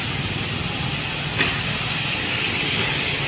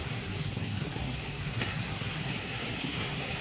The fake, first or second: second